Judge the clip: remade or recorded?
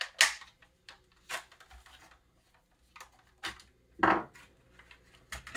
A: recorded